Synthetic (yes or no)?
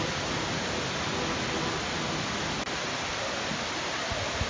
no